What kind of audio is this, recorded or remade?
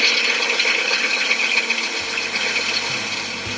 recorded